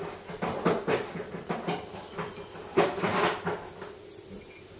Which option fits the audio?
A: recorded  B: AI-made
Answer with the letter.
A